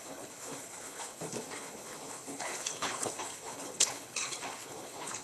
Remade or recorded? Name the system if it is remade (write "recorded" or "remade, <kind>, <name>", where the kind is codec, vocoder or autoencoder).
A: remade, codec, HILCodec